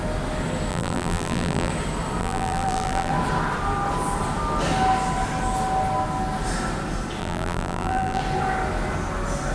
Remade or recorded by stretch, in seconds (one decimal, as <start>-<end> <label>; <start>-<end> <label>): 0.0-0.7 recorded; 0.7-1.7 remade; 1.7-2.2 recorded; 2.2-3.1 remade; 3.1-7.2 recorded; 7.2-8.2 remade; 8.2-9.5 recorded